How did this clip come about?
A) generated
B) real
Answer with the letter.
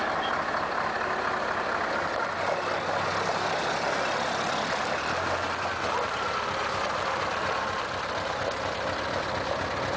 B